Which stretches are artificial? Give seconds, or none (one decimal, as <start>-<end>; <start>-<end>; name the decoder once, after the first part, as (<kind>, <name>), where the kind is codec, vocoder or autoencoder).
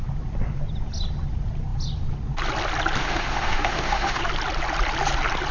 3.0-4.2 (autoencoder, DAC-VAE)